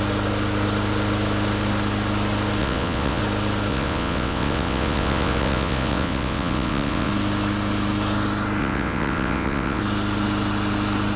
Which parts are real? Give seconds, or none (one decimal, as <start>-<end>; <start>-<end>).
0.0-2.6; 3.2-3.7; 7.1-8.6; 9.8-11.2